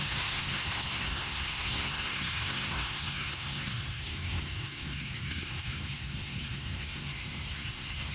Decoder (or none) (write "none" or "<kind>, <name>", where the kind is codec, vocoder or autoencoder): codec, SNAC